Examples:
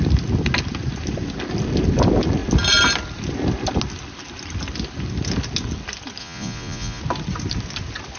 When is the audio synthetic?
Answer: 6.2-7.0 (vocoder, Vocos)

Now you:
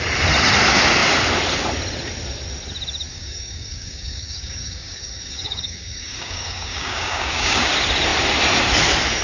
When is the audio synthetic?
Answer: 3.1-7.7 (codec, DAC)

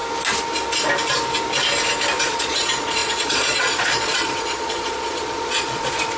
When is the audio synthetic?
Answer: 2.3-6.2 (vocoder, Vocos)

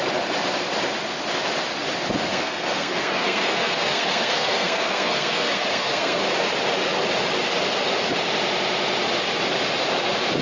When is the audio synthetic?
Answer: 2.3-6.2 (codec, SNAC)